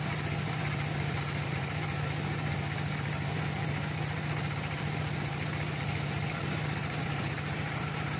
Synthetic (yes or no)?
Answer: yes